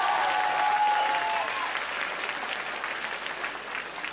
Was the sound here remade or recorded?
recorded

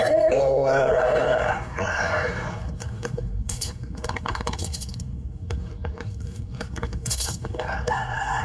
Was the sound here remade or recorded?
remade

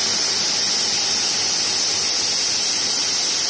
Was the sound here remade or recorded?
recorded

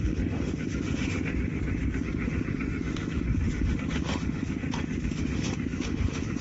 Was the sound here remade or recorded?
remade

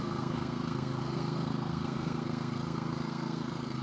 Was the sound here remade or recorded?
remade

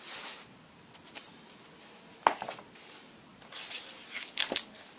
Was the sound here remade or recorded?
recorded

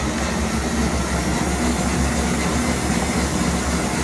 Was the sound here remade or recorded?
recorded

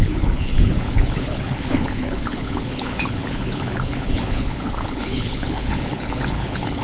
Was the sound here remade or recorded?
remade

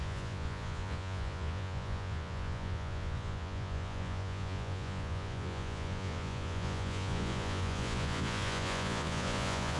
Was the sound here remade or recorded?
remade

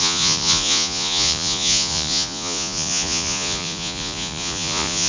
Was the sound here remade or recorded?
remade